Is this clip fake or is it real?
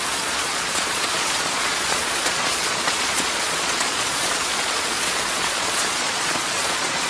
fake